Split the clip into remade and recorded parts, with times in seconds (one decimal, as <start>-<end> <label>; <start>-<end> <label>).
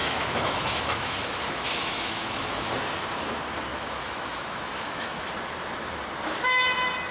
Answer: 0.0-2.7 remade; 2.7-3.7 recorded; 3.7-5.2 remade; 5.2-7.1 recorded